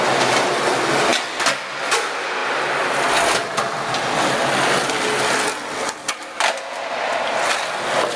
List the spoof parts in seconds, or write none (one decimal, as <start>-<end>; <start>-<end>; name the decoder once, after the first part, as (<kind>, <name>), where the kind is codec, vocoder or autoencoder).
none